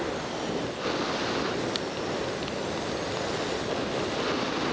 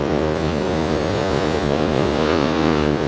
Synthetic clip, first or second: second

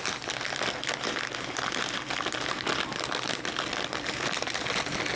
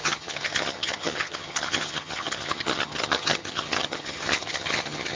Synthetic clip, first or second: second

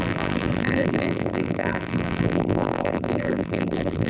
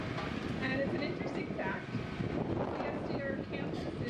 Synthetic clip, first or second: first